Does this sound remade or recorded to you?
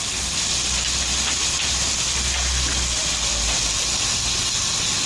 recorded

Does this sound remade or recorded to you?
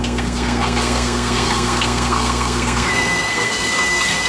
remade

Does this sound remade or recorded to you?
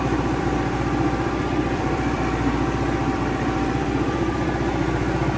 remade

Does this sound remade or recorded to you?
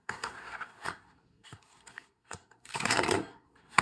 remade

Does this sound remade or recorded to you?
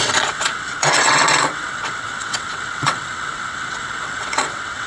remade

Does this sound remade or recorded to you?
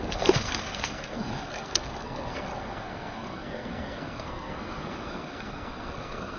remade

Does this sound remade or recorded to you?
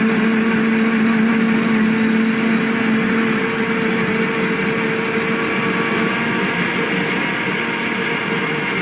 recorded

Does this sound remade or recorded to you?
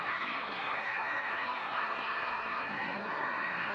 remade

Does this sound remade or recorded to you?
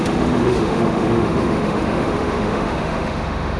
remade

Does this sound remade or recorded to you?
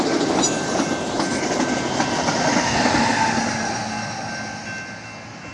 recorded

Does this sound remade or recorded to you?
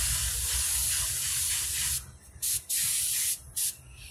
recorded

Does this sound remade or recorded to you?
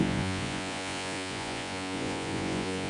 remade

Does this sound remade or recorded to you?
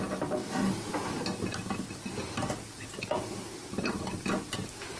recorded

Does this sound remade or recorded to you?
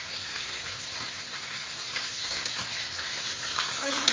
remade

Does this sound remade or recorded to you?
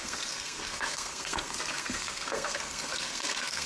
remade